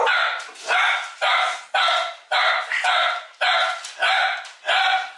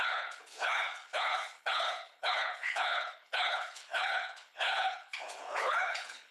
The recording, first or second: first